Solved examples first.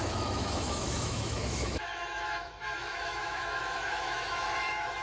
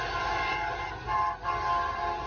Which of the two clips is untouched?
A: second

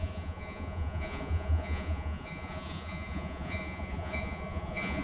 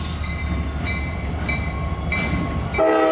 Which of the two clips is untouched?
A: second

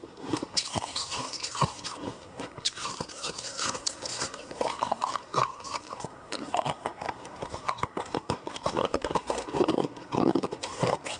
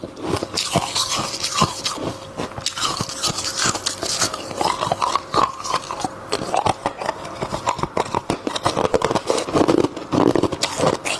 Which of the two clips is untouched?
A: second